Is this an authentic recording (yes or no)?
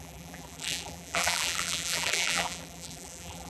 no